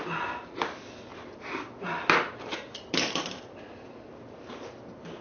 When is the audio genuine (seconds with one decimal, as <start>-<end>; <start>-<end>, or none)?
0.0-5.2